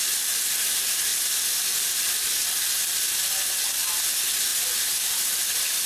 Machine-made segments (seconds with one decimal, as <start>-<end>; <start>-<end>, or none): none